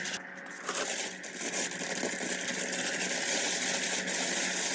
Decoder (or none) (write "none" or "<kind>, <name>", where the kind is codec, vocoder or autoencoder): none